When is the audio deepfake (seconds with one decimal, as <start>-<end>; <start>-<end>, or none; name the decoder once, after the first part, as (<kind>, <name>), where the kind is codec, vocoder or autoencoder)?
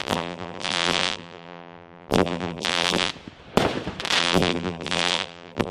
0.0-3.1 (vocoder, BigVGAN v2); 4.2-5.7